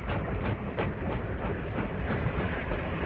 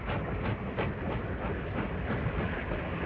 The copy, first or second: first